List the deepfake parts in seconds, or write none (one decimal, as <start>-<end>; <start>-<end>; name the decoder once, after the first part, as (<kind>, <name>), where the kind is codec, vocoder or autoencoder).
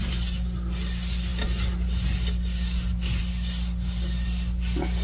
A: none